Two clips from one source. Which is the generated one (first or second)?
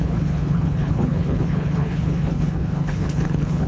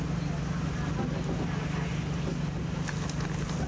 first